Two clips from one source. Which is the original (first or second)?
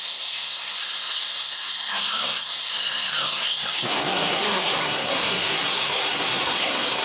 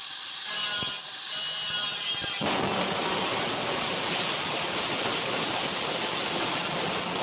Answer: second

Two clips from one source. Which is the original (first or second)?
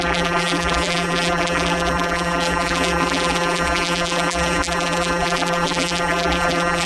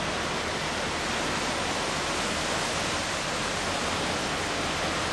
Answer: second